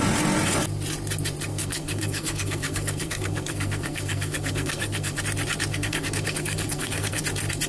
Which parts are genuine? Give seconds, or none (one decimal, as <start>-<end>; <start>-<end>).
0.0-1.5; 5.2-5.7; 7.2-7.7